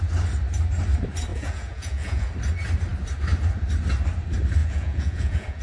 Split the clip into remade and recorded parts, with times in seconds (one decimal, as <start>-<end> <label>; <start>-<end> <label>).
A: 0.0-1.3 recorded; 1.3-2.3 remade; 2.3-4.6 recorded; 4.6-5.6 remade